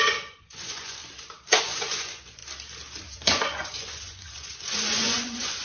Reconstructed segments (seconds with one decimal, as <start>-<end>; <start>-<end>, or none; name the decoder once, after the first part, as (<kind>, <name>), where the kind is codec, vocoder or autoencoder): 0.0-1.0 (vocoder, Vocos); 1.6-2.4; 3.0-5.6